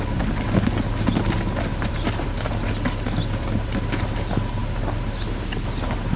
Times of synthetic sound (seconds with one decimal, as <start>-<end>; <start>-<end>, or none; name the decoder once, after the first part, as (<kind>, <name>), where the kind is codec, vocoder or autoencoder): 1.7-2.5 (vocoder, BigVGAN v2)